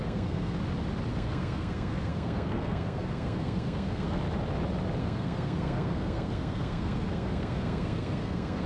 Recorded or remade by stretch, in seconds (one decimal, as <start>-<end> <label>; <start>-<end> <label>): 0.0-0.6 remade; 0.6-1.1 recorded; 1.1-4.2 remade; 4.2-5.0 recorded; 5.0-8.7 remade